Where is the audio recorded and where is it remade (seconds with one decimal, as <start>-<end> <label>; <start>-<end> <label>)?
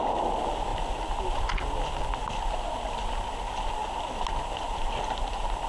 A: 0.0-5.7 recorded